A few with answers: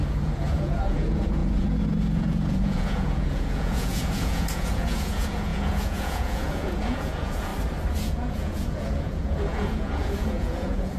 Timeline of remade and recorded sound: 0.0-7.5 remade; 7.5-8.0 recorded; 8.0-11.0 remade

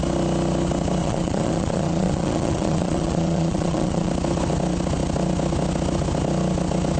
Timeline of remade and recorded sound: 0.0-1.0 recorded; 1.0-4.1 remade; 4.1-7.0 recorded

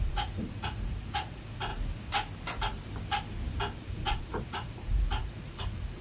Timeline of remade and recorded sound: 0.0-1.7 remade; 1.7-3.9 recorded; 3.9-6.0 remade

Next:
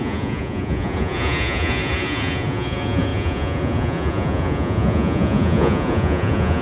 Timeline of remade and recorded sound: 0.0-6.6 remade